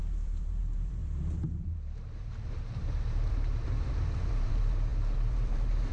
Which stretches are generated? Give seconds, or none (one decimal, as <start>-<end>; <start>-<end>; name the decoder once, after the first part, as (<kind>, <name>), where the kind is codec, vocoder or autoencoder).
0.0-5.9 (vocoder, BigVGAN v2)